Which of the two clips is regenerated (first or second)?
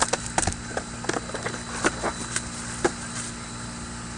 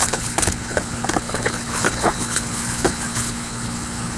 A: second